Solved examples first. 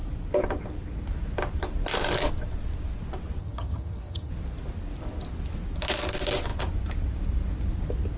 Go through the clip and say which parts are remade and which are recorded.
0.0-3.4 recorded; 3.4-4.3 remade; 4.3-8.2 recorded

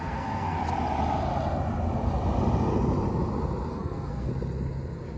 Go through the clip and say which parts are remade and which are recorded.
0.0-0.6 remade; 0.6-3.7 recorded; 3.7-4.3 remade; 4.3-5.2 recorded

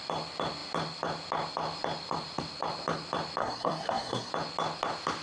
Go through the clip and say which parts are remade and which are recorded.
0.0-3.4 recorded; 3.4-4.3 remade; 4.3-5.2 recorded

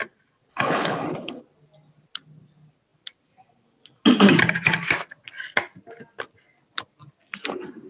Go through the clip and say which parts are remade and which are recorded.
0.0-0.5 recorded; 0.5-1.4 remade; 1.4-7.9 recorded

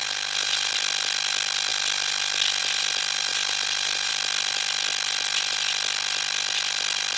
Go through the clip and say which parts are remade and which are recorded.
0.0-0.7 remade; 0.7-3.3 recorded; 3.3-4.1 remade; 4.1-7.2 recorded

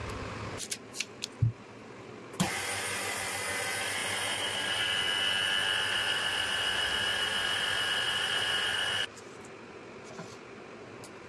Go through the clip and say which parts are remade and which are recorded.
0.0-11.3 recorded

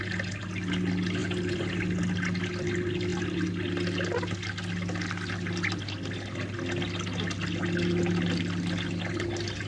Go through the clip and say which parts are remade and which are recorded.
0.0-9.7 recorded

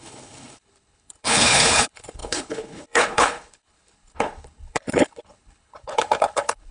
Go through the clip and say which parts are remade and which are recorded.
0.0-6.7 remade